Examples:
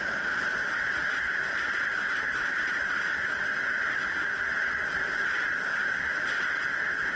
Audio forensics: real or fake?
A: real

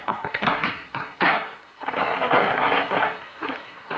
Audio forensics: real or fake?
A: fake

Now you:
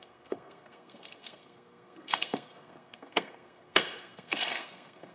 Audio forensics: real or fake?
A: fake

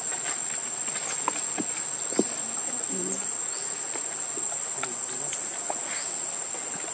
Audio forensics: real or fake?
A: real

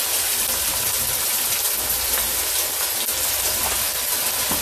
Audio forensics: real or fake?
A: real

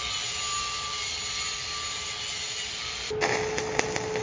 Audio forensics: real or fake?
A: real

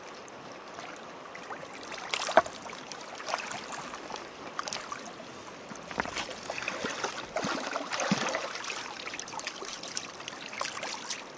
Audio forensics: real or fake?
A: real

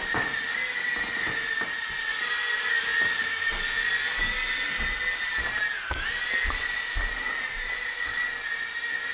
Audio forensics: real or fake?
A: real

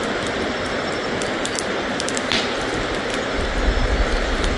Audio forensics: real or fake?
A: real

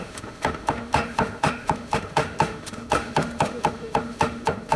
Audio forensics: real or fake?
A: fake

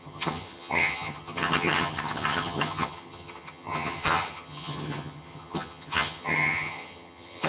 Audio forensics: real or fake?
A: fake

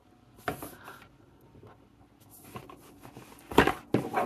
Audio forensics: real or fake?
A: real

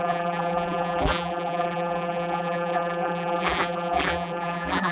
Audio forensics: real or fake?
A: fake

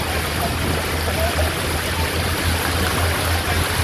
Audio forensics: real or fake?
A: real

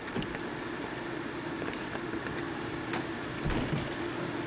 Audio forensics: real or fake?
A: fake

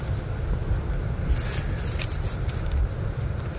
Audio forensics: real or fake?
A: real